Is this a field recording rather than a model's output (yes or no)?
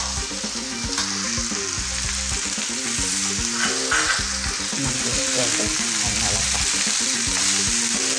yes